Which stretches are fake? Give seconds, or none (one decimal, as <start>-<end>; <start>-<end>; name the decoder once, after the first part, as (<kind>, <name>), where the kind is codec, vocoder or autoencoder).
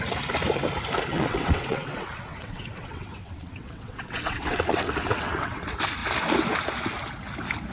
1.1-5.6 (vocoder, WaveNeXt)